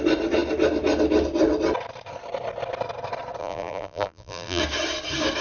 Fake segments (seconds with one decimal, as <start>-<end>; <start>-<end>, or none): 3.4-4.6